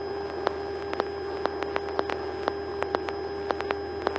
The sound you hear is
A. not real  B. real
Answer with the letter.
B